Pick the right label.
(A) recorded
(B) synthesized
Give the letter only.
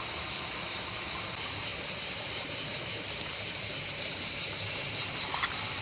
A